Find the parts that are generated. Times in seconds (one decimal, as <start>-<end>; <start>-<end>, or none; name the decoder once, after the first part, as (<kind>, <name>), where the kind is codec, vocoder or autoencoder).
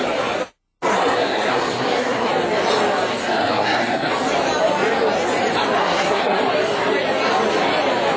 0.9-2.3 (codec, SNAC); 3.2-4.1; 5.8-6.4